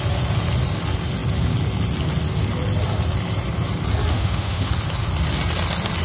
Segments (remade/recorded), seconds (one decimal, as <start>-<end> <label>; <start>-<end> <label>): 0.0-4.1 recorded; 4.1-4.7 remade; 4.7-6.0 recorded